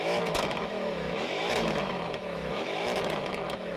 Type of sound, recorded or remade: remade